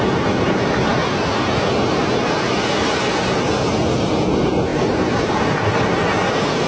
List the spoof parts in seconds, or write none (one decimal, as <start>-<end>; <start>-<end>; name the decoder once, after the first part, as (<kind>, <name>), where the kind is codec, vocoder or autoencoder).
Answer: none

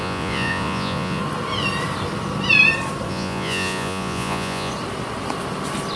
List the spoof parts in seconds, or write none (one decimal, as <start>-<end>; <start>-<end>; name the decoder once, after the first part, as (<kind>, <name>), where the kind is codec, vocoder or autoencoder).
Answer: 0.0-1.2 (vocoder, Vocos); 3.1-4.7

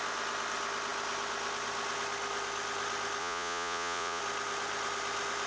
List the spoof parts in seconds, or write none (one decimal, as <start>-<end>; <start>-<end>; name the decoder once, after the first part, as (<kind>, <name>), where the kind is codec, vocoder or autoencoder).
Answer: 3.2-4.2 (vocoder, Vocos)

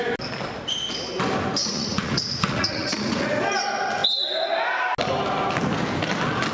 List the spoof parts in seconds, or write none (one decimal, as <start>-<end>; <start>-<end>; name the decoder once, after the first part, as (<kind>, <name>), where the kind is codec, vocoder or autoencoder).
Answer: 1.6-3.3 (vocoder, Vocos)

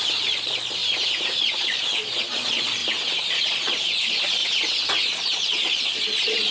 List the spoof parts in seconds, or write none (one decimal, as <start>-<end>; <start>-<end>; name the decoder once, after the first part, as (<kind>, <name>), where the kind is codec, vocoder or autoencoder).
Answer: 0.0-0.8 (vocoder, Vocos); 1.6-2.8; 3.3-4.4; 5.0-6.5